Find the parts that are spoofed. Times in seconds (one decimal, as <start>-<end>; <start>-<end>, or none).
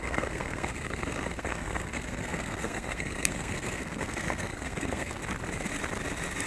0.0-5.2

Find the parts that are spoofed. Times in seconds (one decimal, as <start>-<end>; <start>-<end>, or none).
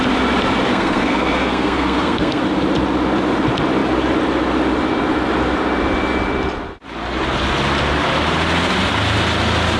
0.7-2.4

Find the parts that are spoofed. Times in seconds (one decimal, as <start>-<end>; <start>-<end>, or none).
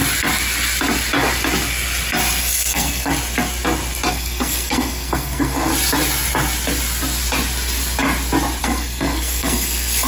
2.4-3.1; 4.1-5.7; 8.6-10.1